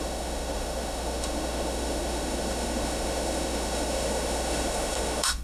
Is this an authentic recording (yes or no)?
no